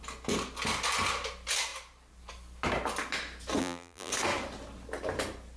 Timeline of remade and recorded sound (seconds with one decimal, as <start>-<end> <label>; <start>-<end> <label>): 0.0-3.6 recorded; 3.6-4.1 remade; 4.1-5.6 recorded